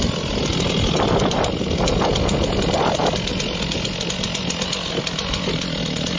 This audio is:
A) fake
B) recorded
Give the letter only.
B